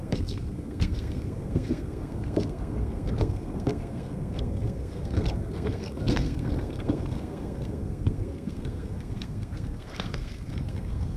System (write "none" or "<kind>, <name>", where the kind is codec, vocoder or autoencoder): codec, SNAC